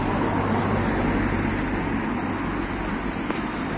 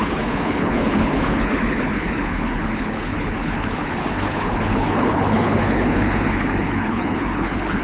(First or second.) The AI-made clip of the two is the second